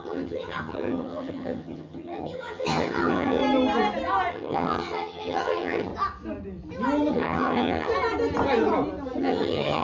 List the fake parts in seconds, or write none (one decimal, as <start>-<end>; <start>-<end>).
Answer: 0.0-3.4; 4.3-5.9; 7.1-7.9; 9.2-9.8